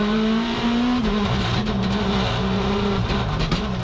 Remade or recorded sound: remade